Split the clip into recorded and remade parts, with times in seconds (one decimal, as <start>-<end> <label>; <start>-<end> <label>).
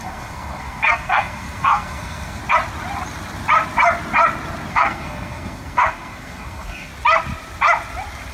0.0-2.4 remade; 2.4-4.7 recorded; 4.7-6.9 remade; 6.9-8.3 recorded